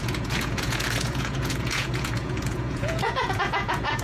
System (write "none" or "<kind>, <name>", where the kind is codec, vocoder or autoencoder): vocoder, Vocos